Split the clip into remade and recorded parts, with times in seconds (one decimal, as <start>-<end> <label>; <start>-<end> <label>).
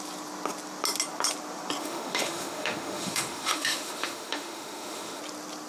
0.0-1.8 recorded; 1.8-5.2 remade; 5.2-5.7 recorded